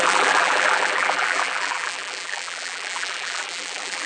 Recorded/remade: remade